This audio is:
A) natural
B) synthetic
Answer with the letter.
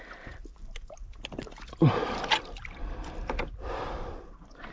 A